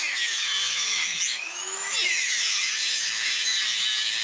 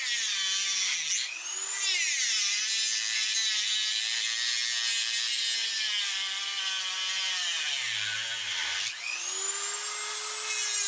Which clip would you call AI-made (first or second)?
first